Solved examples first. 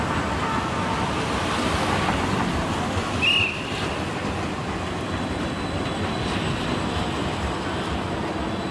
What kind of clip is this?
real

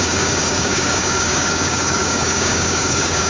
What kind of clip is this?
fake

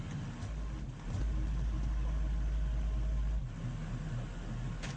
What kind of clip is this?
real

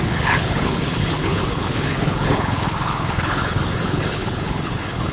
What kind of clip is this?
fake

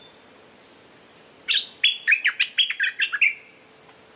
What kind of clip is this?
real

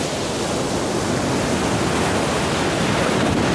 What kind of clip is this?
real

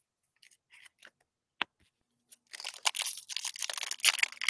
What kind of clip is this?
real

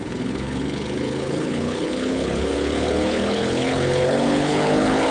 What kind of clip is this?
fake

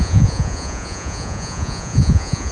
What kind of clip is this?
fake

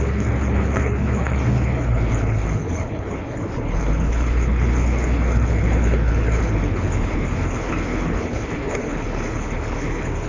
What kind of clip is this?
fake